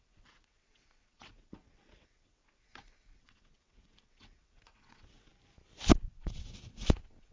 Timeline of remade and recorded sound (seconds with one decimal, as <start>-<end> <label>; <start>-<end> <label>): 0.0-5.3 remade; 5.3-6.1 recorded; 6.1-7.3 remade